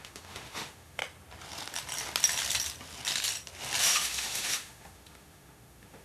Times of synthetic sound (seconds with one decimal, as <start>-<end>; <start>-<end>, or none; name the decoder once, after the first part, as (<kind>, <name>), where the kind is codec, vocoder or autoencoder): 0.0-1.0 (autoencoder, DAC-VAE); 3.8-6.0